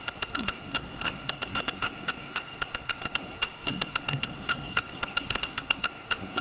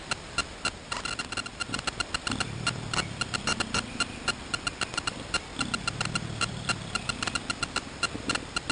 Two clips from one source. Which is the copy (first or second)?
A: first